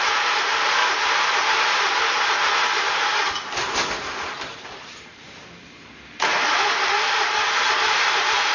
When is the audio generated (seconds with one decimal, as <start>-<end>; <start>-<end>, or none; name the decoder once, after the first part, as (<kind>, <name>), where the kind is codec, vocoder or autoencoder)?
0.0-0.8 (vocoder, BigVGAN v2); 2.9-8.5